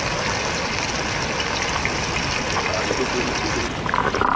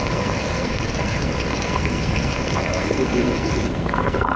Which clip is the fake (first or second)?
second